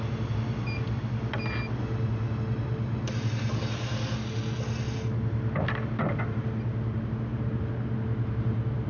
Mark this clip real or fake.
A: real